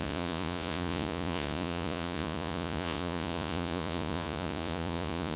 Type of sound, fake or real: fake